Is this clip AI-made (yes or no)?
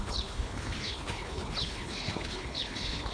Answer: yes